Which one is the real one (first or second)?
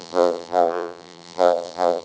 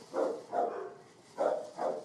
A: second